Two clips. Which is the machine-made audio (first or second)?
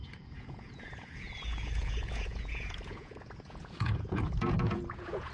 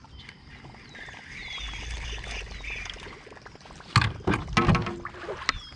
first